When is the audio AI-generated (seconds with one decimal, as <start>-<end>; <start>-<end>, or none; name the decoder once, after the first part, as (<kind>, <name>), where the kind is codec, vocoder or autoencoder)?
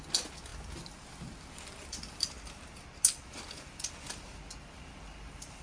none